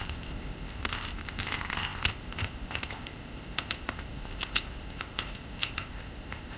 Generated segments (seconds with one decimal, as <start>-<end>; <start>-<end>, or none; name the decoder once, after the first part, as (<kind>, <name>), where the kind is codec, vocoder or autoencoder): 0.0-6.6 (codec, ZipCodec)